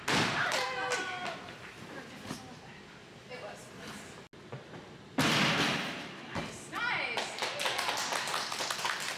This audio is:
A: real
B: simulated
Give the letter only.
A